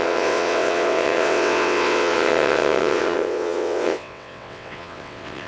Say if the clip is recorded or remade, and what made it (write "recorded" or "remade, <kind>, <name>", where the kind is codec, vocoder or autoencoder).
remade, vocoder, WaveNeXt